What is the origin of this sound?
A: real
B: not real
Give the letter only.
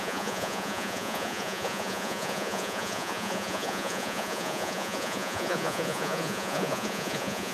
B